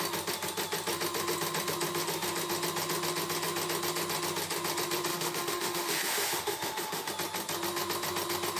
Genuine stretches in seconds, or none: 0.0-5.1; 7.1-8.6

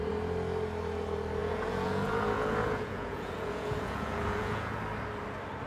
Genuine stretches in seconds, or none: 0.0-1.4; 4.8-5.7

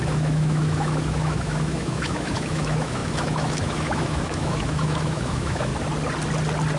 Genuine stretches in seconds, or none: 5.7-6.8